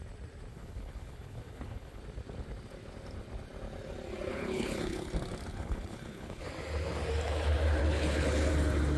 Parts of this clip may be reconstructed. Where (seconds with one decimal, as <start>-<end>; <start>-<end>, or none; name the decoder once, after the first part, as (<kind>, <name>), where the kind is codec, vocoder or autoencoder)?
0.5-2.0 (codec, HILCodec); 4.3-5.1; 5.5-6.5; 7.8-8.5